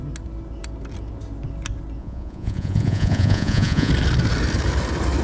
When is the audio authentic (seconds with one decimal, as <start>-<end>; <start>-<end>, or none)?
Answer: 0.0-2.0; 3.9-5.2